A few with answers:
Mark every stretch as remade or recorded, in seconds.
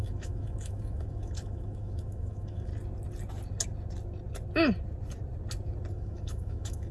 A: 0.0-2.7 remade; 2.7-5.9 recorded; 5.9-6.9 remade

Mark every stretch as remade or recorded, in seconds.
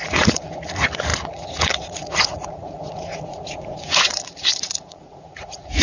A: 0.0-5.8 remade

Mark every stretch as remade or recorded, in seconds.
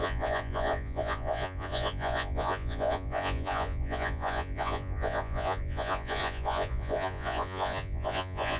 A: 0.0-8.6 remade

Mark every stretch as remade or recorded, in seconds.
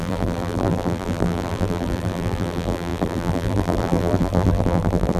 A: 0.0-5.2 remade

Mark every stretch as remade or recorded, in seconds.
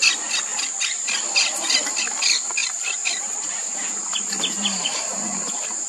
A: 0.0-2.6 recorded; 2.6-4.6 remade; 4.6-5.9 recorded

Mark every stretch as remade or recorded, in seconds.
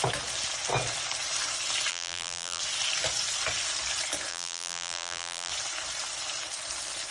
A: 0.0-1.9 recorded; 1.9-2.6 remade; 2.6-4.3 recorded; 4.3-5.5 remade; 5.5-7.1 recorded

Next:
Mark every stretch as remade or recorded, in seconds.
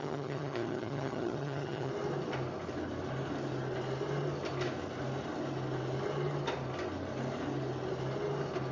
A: 0.0-1.9 remade; 1.9-8.7 recorded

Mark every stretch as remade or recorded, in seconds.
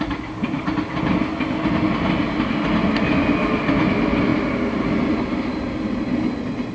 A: 0.0-6.7 recorded